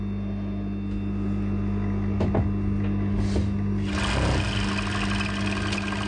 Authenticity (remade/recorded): recorded